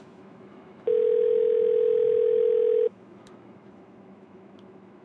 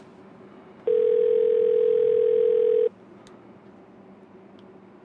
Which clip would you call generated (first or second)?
first